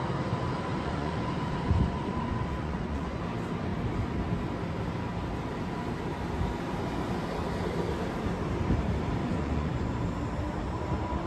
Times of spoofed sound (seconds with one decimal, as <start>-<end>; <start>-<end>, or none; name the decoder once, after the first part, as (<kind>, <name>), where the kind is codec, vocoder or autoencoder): 0.7-3.2 (vocoder, Vocos); 9.2-10.0